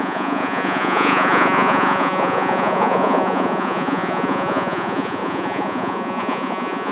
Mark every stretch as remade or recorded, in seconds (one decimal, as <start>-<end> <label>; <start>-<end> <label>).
0.0-6.9 remade